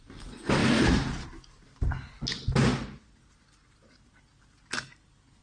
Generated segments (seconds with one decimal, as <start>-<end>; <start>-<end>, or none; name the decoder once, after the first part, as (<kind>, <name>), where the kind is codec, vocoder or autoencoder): none